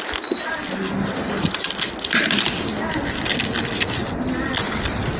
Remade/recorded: recorded